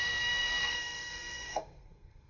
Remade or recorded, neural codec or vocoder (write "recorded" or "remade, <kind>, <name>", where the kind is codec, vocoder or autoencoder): remade, codec, SNAC